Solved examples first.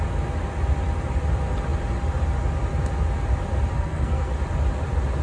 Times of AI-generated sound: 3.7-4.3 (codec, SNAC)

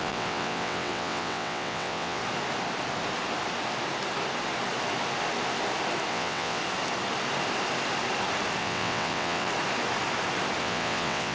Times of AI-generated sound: 0.0-2.2 (vocoder, WaveNeXt); 6.1-6.6; 8.6-9.5; 10.6-11.3

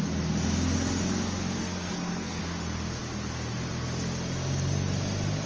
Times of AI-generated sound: 1.6-2.4 (codec, SNAC)

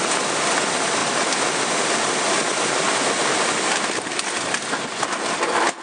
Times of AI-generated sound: none

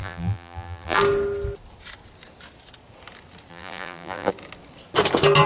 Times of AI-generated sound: 0.0-1.0 (vocoder, BigVGAN v2); 3.5-4.3

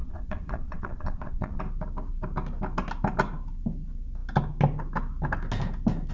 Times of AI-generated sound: 0.0-1.6 (vocoder, Vocos)